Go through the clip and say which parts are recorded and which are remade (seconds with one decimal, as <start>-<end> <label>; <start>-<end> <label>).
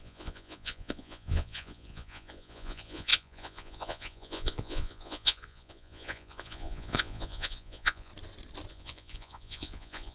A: 0.0-8.1 remade; 8.1-8.7 recorded; 8.7-10.1 remade